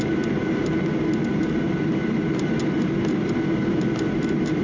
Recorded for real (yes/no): yes